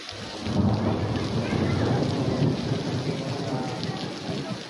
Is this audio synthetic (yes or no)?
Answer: no